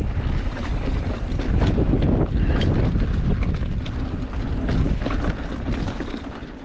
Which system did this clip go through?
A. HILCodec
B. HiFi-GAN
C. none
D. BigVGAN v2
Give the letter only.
C